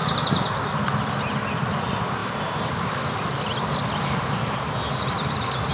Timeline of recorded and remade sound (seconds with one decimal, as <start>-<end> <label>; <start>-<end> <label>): 0.0-0.6 remade; 0.6-5.7 recorded